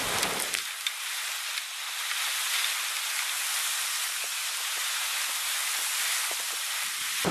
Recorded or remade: recorded